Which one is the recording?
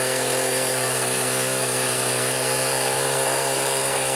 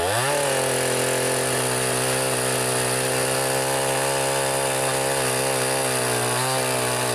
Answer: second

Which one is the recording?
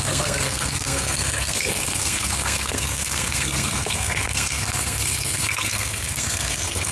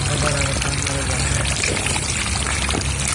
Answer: second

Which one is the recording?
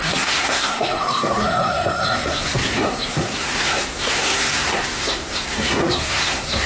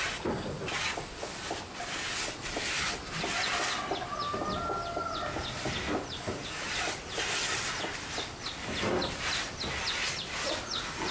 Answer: second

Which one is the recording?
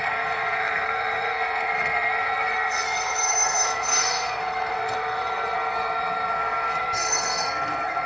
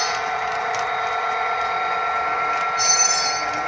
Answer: second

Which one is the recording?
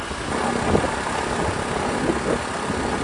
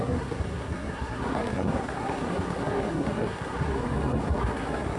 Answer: first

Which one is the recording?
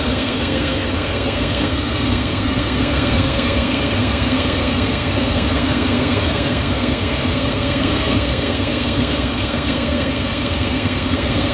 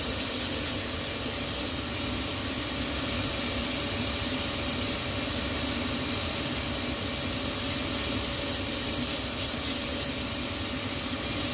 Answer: second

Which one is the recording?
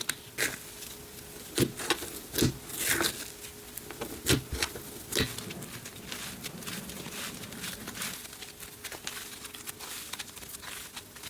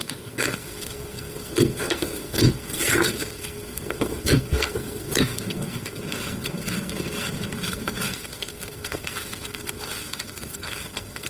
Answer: first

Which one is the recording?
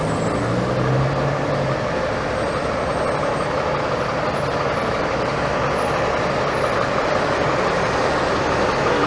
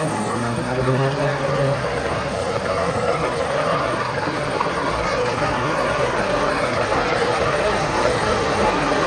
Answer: first